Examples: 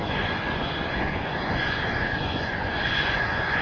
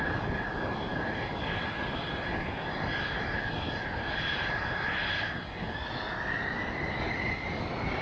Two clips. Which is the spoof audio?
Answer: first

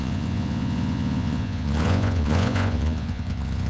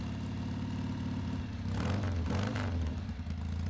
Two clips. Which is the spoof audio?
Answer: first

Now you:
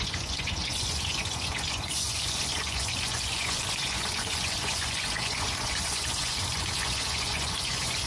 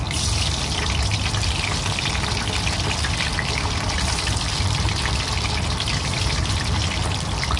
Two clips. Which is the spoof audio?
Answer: first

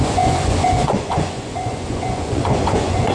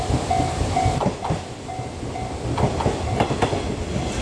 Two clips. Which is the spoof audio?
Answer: first